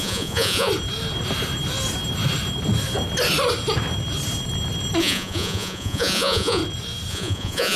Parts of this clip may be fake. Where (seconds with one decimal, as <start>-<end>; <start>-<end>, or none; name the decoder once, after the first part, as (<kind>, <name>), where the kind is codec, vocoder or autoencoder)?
0.0-0.7 (vocoder, Vocos); 5.0-6.6; 7.1-7.8